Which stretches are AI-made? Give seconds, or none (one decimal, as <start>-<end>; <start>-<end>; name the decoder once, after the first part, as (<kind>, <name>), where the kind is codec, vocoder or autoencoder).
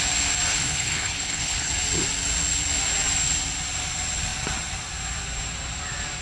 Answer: 0.5-1.7 (codec, HILCodec)